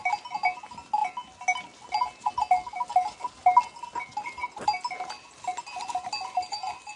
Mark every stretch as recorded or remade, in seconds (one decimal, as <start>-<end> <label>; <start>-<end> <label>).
0.0-7.0 recorded